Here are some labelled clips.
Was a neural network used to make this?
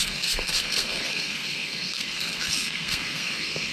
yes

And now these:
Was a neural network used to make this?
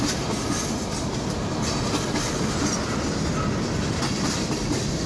no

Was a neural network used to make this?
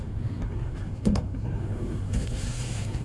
yes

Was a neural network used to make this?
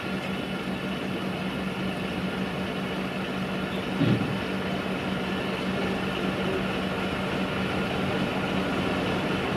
no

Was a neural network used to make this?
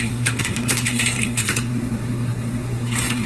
yes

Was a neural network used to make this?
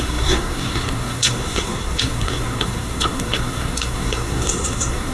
yes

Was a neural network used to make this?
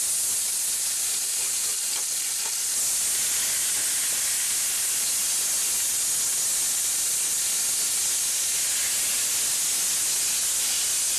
no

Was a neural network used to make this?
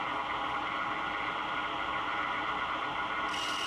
no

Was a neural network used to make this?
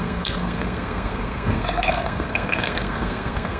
yes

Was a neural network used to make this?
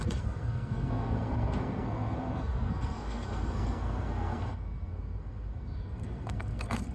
yes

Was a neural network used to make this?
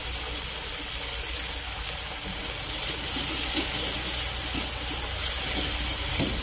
no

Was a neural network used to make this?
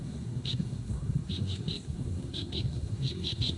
yes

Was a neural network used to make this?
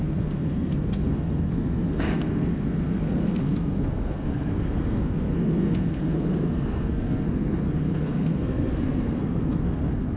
yes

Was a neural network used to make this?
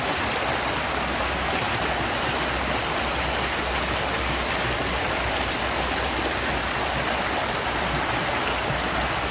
no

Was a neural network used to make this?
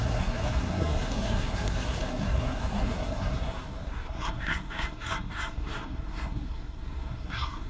yes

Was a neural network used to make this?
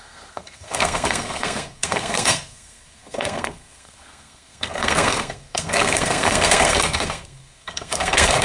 yes